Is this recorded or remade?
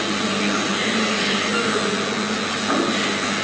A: recorded